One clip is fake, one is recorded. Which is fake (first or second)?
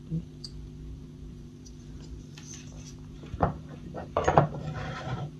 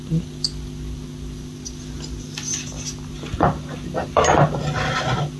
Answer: first